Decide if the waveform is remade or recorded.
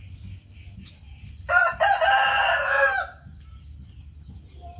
recorded